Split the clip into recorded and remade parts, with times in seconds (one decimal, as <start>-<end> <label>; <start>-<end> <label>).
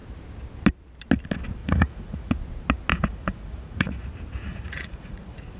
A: 0.0-1.6 recorded; 1.6-2.4 remade; 2.4-2.9 recorded; 2.9-4.1 remade; 4.1-4.5 recorded; 4.5-5.6 remade